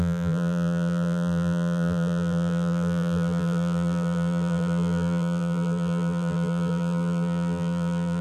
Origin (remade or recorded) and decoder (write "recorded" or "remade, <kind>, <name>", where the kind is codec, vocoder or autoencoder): remade, vocoder, BigVGAN v2